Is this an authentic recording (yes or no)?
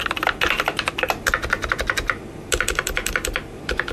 yes